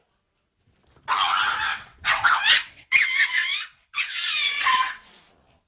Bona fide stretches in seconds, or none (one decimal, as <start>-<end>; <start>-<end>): 0.0-1.7; 5.1-5.7